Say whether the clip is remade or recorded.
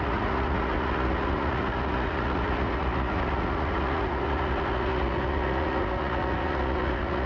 remade